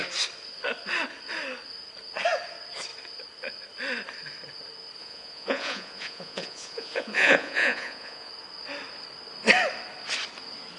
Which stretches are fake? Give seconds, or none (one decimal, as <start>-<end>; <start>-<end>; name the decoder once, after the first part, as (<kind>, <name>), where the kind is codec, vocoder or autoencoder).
5.0-8.3 (vocoder, Vocos)

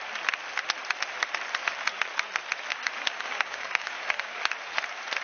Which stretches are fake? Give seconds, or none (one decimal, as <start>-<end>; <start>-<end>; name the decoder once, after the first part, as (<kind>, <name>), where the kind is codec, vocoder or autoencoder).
2.7-4.5 (codec, DAC)

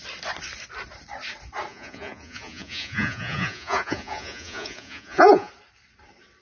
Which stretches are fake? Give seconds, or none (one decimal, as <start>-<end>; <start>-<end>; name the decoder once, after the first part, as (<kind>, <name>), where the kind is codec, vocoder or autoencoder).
1.7-5.5 (vocoder, Vocos)

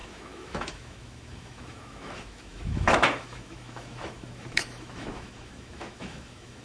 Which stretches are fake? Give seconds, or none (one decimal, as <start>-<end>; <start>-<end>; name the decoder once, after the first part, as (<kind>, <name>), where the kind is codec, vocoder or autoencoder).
0.0-6.6 (autoencoder, DAC-VAE)